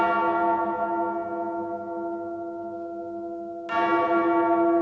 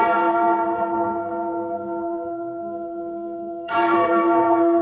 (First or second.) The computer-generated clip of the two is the second